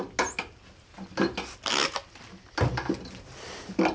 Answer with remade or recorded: recorded